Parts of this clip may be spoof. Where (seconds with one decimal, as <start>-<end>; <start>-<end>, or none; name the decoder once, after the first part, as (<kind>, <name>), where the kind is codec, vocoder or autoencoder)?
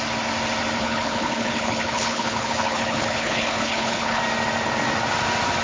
0.8-4.2 (codec, HILCodec)